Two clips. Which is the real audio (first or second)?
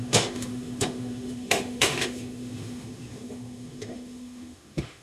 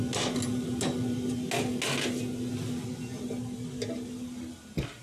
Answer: second